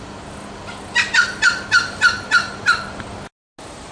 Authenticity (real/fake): real